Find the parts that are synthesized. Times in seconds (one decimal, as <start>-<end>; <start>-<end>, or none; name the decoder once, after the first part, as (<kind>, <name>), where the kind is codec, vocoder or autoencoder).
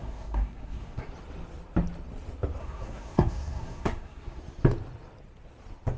0.0-1.1 (codec, SNAC); 2.6-4.4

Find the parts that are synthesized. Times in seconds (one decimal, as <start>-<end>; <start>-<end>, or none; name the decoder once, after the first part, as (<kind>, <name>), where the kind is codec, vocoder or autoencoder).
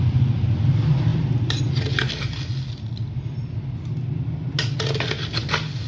1.1-1.7 (vocoder, BigVGAN v2)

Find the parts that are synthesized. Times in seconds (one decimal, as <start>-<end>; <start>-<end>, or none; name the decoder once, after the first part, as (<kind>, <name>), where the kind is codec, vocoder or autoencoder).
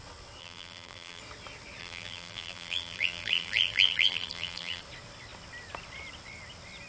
0.4-1.2 (vocoder, BigVGAN v2); 1.8-4.8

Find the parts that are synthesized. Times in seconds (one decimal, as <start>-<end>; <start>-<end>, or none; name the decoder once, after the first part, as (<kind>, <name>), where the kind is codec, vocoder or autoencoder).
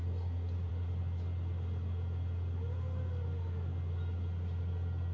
none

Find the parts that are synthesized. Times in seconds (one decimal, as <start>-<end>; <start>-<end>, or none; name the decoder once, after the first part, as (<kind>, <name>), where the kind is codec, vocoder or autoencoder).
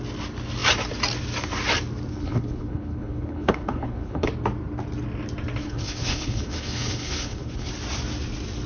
2.1-4.3 (codec, HILCodec); 5.6-7.7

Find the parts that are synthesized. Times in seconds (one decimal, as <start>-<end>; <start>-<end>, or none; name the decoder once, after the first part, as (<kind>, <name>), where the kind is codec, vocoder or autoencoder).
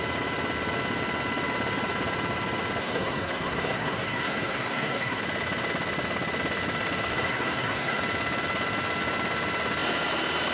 2.8-5.2 (codec, SNAC); 7.1-8.0